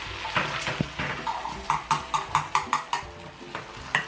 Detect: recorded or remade recorded